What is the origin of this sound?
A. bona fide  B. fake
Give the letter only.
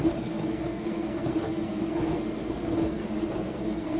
B